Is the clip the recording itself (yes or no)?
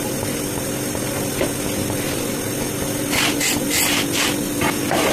yes